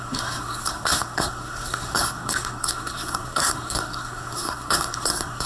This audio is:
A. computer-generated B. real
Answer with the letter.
A